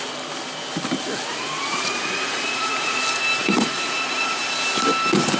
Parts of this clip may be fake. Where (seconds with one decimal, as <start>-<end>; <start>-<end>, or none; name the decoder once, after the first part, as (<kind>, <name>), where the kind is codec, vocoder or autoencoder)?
1.3-3.0 (vocoder, Vocos); 3.4-4.4